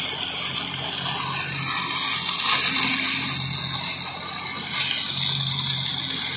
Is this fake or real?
real